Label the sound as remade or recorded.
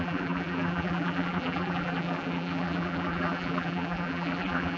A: remade